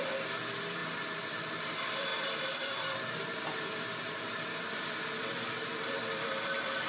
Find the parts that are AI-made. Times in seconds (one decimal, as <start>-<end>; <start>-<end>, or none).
0.0-0.8; 1.3-6.9